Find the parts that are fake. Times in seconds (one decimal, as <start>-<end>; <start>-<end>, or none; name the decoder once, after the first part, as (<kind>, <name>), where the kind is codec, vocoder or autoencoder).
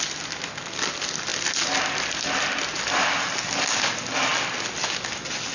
none